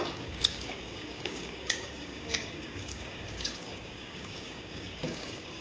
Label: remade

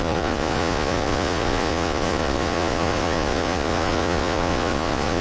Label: remade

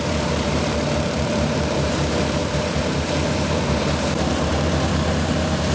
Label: remade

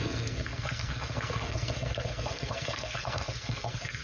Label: remade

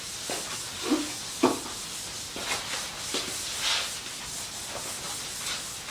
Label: recorded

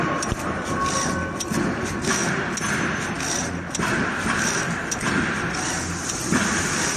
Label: recorded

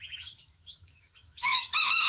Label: remade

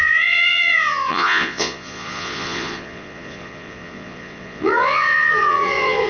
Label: remade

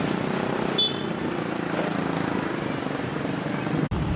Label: recorded